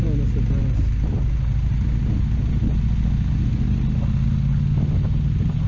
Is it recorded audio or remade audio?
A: recorded